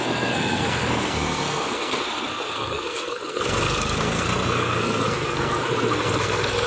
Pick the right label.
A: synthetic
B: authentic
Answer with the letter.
A